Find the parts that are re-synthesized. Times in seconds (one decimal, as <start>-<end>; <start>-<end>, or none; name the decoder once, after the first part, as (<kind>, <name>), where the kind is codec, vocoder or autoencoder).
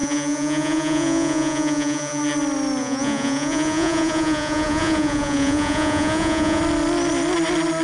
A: 0.0-2.2 (vocoder, Vocos); 2.8-6.6